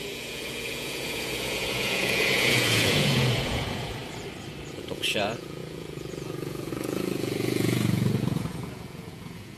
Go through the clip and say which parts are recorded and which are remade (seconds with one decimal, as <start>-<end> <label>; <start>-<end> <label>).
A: 0.0-4.0 remade; 4.0-4.7 recorded; 4.7-9.6 remade

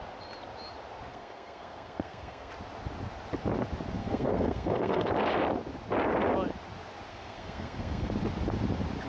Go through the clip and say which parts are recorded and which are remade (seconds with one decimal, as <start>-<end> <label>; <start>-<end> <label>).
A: 0.0-1.1 recorded; 1.1-2.5 remade; 2.5-4.0 recorded; 4.0-5.1 remade; 5.1-7.1 recorded; 7.1-8.1 remade; 8.1-9.1 recorded

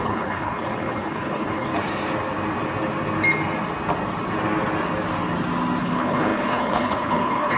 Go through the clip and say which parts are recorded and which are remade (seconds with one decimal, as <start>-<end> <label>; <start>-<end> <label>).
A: 0.0-1.7 remade; 1.7-5.8 recorded; 5.8-7.6 remade

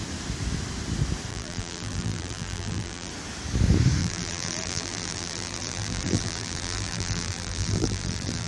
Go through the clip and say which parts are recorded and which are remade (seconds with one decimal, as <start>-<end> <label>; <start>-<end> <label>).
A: 0.0-1.3 recorded; 1.3-3.1 remade; 3.1-4.0 recorded; 4.0-8.5 remade

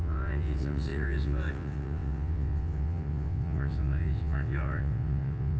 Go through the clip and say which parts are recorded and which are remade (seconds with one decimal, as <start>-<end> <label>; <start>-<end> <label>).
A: 0.0-5.6 remade

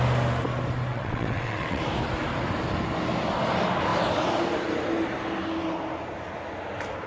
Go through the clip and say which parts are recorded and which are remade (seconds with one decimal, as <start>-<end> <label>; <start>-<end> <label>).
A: 0.0-0.9 recorded; 0.9-1.8 remade; 1.8-7.1 recorded

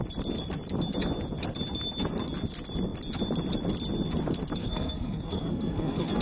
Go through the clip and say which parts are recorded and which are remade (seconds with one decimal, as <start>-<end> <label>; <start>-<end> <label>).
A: 0.0-4.6 recorded; 4.6-6.2 remade

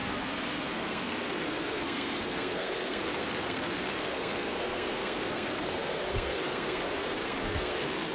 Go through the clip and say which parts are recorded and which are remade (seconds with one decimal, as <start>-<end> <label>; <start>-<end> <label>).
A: 0.0-8.1 remade